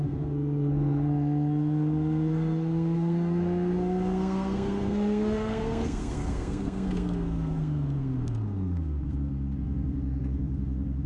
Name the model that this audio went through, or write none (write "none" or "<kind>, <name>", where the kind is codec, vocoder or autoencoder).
codec, SNAC